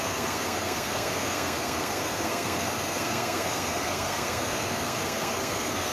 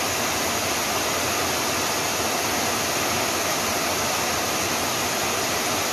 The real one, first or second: second